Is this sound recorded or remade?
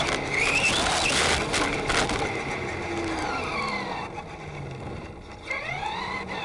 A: recorded